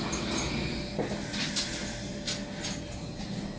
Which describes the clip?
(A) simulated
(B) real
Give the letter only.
B